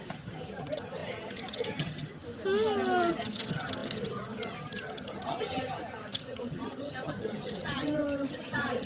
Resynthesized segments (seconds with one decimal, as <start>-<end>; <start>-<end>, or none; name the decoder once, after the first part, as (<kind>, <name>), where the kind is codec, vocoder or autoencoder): 0.0-2.2 (vocoder, HiFi-GAN); 3.1-8.9